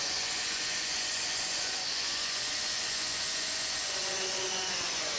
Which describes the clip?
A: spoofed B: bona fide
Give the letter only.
A